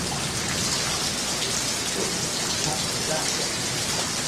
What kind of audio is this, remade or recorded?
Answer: recorded